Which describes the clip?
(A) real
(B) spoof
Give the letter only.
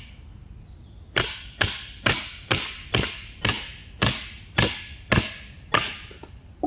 A